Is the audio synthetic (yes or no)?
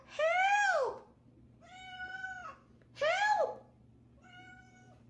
no